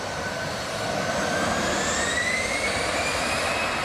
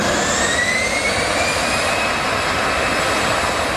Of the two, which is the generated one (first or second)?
first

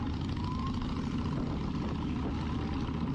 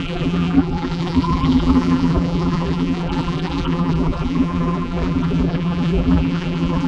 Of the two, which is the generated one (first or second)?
second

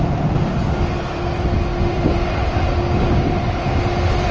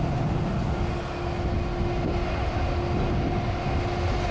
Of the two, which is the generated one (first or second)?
first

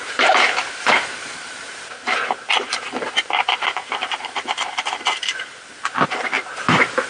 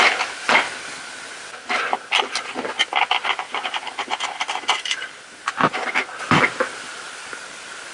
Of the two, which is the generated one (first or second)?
first